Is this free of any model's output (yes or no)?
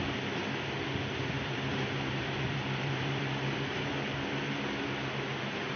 no